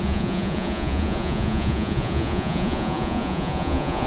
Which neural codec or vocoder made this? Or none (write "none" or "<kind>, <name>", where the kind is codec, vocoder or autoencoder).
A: vocoder, Vocos